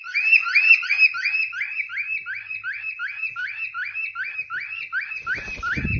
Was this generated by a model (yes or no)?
no